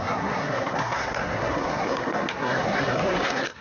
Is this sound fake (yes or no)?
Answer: yes